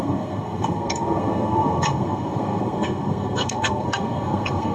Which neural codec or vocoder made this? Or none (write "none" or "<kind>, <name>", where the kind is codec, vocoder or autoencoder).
codec, SNAC